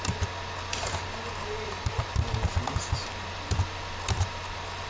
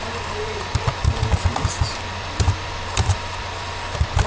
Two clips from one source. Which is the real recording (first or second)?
first